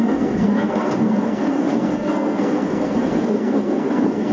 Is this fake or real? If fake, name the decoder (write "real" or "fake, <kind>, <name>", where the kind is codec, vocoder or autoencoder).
fake, codec, SNAC